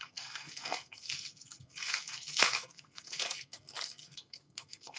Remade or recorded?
remade